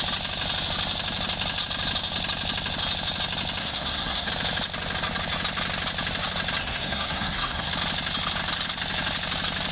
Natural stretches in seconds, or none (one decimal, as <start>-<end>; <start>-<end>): 0.0-3.6; 4.3-6.6; 7.7-9.7

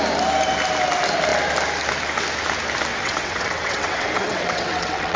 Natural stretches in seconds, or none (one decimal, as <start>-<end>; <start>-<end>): 0.0-2.9

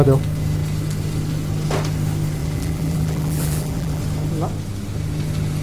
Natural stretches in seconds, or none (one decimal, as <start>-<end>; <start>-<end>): 0.0-2.4; 4.0-5.6

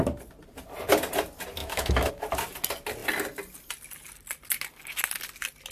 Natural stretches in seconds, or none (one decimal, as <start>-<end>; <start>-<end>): 0.0-1.6; 2.1-5.7

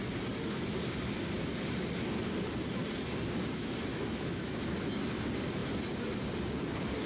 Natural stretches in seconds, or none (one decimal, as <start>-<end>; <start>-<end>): 0.0-3.9; 4.7-7.1

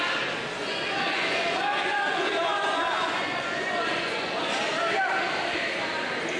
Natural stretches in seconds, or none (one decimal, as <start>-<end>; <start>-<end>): 0.0-0.6; 4.4-6.4

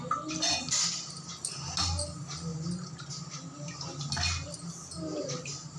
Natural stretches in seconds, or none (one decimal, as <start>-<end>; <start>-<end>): 0.0-5.8